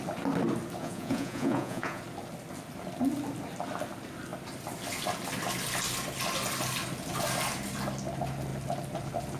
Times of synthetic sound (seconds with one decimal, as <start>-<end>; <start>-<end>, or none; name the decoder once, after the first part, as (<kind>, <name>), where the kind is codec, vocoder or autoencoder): 0.8-2.0 (vocoder, Vocos)